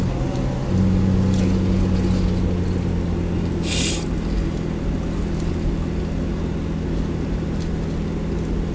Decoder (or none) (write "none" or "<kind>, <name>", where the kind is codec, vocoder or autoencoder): none